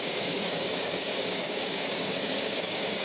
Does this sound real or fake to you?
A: fake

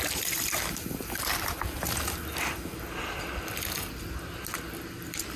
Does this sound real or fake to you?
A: real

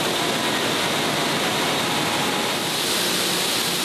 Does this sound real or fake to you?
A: real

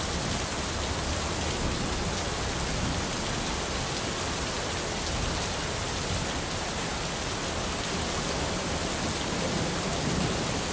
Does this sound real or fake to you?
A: real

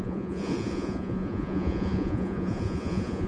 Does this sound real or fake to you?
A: fake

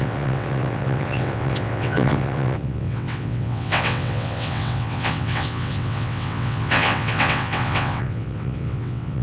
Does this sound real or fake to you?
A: fake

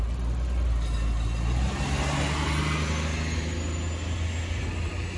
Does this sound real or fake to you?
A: real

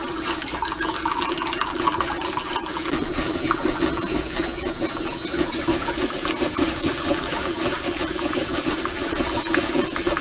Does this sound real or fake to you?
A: fake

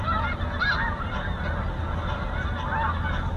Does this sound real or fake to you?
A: real